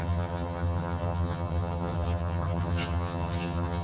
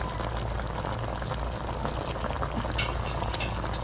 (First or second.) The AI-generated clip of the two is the first